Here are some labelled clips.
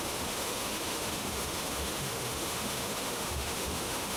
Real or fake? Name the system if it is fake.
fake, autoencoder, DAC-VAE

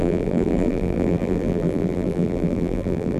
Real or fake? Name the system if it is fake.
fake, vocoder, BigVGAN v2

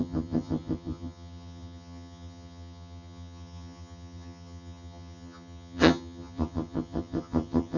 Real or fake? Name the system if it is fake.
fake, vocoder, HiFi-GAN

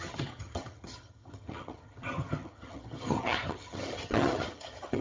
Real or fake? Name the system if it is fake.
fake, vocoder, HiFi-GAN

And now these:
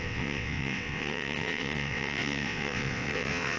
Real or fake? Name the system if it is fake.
fake, vocoder, WaveNeXt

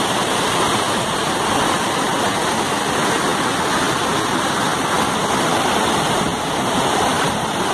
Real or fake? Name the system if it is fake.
real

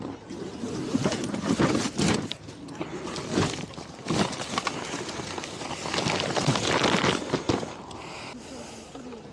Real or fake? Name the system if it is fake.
real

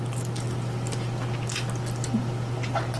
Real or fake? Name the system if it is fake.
real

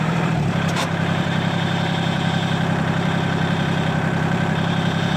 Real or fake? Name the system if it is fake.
fake, vocoder, BigVGAN v2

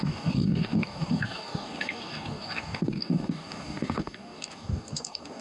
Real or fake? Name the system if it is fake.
fake, codec, DAC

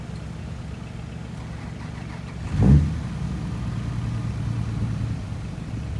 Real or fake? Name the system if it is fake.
real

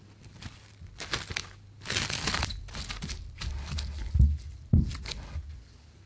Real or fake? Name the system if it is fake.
real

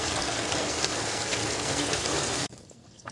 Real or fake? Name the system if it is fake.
fake, codec, SNAC